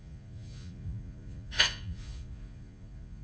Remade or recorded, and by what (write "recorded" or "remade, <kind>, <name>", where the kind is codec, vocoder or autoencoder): remade, vocoder, Vocos